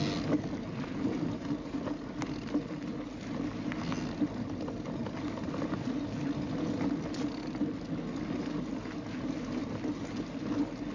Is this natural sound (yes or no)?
yes